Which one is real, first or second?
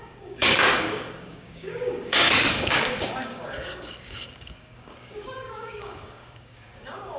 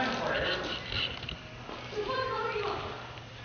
second